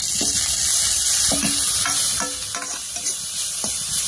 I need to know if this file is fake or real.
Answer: real